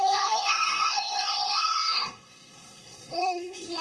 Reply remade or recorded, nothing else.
remade